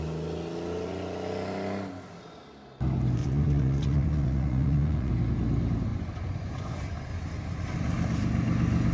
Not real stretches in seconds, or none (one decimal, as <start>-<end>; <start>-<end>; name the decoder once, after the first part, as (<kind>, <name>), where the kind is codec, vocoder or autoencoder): 3.2-5.1 (vocoder, Vocos); 5.9-7.1